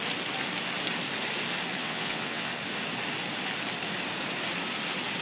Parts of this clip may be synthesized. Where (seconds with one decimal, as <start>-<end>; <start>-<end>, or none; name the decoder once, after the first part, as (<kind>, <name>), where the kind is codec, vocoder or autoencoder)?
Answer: 1.8-2.5 (vocoder, WaveNeXt)